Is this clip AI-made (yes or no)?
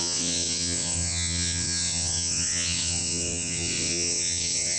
yes